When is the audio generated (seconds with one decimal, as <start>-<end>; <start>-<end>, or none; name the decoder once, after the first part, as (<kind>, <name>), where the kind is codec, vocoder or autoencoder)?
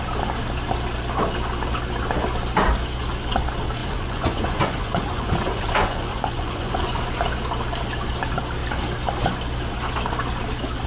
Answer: 3.8-7.1 (vocoder, Vocos)